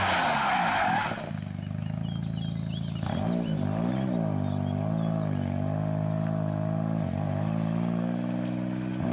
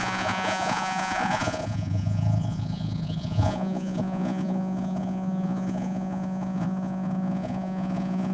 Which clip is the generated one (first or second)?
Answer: second